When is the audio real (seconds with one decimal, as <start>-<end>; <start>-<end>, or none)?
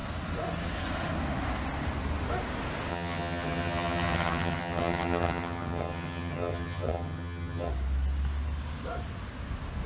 0.0-2.9; 7.7-9.9